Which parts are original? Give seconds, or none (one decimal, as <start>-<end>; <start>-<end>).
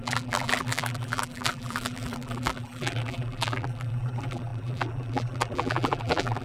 none